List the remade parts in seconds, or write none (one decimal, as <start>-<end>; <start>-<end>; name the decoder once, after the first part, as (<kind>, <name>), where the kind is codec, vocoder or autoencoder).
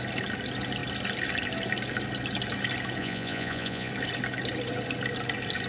3.0-3.9 (vocoder, Vocos)